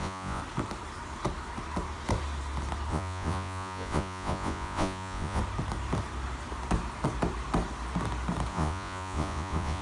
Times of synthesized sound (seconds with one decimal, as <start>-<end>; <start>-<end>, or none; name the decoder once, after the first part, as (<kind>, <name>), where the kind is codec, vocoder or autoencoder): 0.0-0.4 (vocoder, Vocos); 2.9-5.4; 8.5-9.8